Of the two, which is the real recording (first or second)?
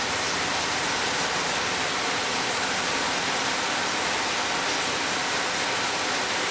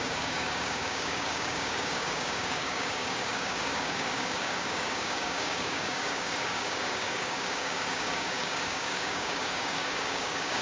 first